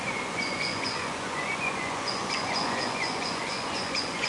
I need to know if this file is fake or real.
fake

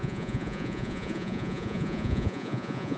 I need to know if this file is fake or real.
fake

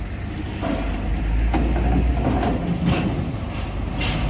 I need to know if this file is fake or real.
real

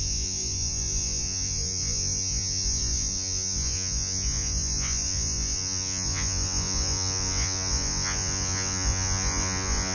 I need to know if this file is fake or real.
fake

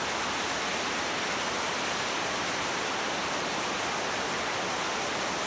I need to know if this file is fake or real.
real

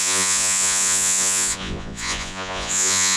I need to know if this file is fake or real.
fake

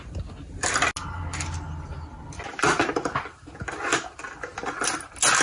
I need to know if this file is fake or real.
real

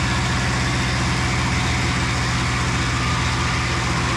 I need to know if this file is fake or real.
real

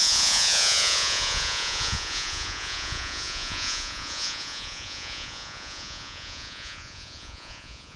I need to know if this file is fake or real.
fake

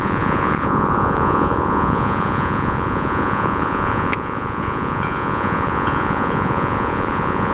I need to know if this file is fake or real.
fake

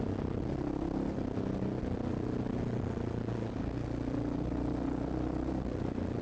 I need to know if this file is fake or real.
real